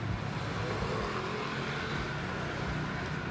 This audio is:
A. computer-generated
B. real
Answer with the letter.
B